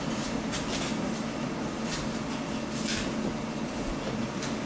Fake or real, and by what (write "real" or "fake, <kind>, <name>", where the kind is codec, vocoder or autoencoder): real